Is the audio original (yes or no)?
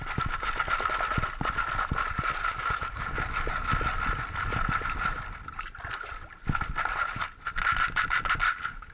yes